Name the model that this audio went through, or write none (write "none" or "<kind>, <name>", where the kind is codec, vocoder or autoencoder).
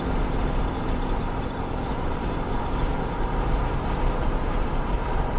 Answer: vocoder, BigVGAN v2